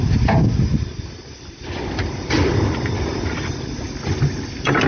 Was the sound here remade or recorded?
recorded